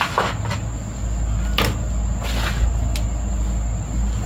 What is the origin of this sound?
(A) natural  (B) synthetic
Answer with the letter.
A